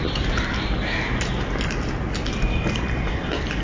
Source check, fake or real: real